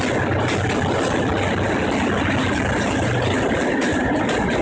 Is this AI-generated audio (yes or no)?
no